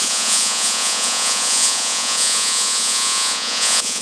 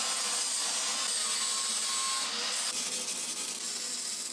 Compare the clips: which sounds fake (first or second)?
first